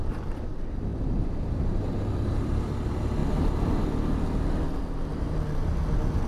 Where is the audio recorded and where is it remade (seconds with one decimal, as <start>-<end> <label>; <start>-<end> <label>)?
0.0-3.2 recorded; 3.2-3.8 remade; 3.8-6.3 recorded